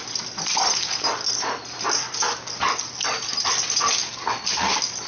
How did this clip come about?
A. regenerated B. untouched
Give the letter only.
B